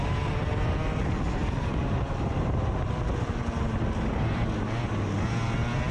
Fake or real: real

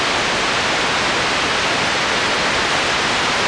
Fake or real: real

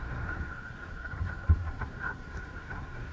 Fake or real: fake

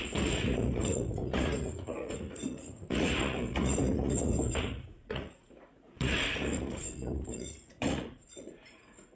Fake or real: fake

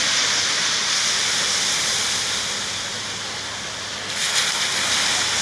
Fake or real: real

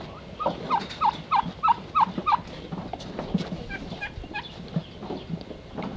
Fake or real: real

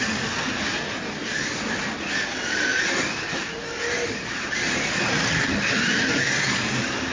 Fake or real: real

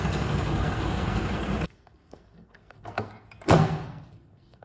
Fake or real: fake